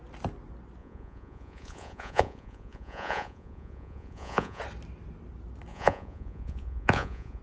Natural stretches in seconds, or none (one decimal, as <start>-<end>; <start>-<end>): 0.0-0.8; 4.6-5.7